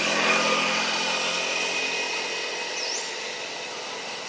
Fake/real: real